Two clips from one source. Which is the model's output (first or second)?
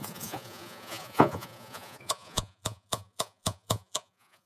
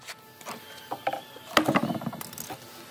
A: first